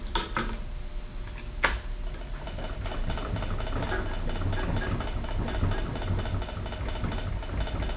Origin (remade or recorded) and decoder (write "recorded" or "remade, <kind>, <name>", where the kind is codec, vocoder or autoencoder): recorded